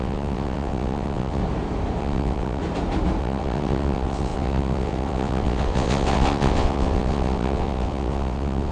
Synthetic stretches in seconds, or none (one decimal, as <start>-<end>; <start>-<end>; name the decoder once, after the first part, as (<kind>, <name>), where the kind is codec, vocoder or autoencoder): 0.0-1.4 (vocoder, WaveNeXt); 2.0-2.6; 3.2-8.7